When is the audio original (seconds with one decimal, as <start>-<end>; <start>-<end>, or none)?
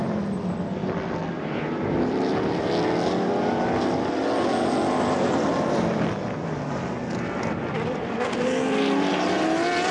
0.0-9.9